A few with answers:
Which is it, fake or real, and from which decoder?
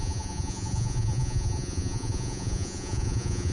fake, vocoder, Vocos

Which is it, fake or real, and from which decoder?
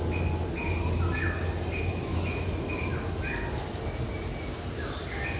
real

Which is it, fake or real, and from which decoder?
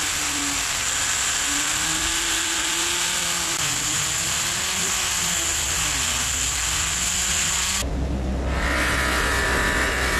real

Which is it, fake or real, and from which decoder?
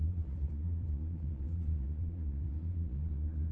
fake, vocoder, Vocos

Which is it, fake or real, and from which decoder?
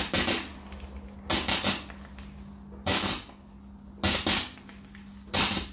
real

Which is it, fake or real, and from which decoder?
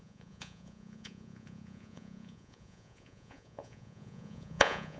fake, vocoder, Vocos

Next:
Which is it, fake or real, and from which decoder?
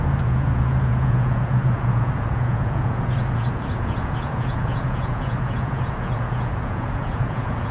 fake, vocoder, Vocos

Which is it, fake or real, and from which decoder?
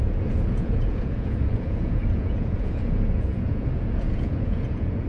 fake, vocoder, Vocos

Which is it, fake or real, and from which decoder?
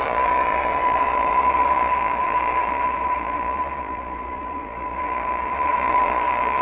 fake, vocoder, Vocos